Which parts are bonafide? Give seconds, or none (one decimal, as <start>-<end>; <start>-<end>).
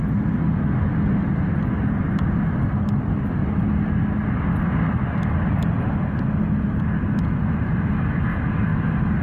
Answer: 0.0-9.2